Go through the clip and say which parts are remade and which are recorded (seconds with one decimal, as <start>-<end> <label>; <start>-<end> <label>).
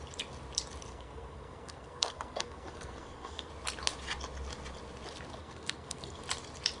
0.0-0.9 recorded; 0.9-3.5 remade; 3.5-5.4 recorded; 5.4-6.2 remade; 6.2-6.8 recorded